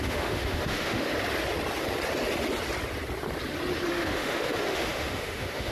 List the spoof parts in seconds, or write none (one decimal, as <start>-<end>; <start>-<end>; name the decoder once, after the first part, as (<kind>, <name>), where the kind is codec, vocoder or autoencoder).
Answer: 0.0-1.1 (autoencoder, DAC-VAE); 3.9-5.7